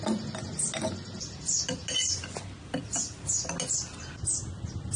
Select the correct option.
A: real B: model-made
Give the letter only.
A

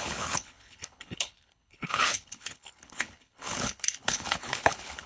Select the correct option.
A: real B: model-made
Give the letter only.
B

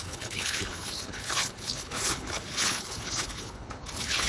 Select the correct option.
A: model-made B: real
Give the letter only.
A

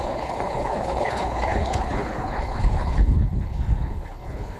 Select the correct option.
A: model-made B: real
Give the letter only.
A